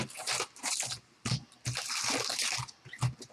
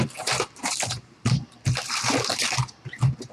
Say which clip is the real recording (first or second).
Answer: first